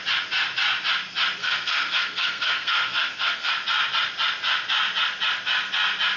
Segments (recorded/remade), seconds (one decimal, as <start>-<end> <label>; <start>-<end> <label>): 0.0-1.4 recorded; 1.4-3.5 remade; 3.5-6.2 recorded